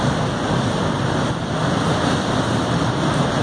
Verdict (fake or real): real